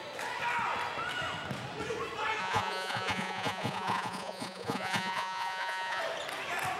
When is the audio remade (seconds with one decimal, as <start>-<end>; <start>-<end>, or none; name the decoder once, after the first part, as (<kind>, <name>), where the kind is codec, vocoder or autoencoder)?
2.4-6.0 (vocoder, Vocos)